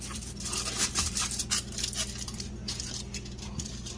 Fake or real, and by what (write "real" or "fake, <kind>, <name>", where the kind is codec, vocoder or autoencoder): real